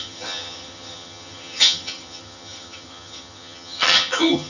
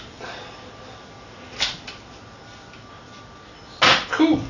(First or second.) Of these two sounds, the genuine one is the second